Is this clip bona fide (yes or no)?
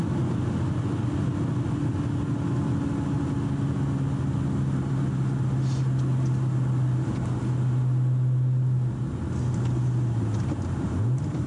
yes